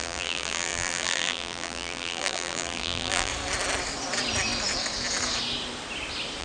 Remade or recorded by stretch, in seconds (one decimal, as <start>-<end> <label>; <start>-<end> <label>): 0.0-3.3 remade; 3.3-6.4 recorded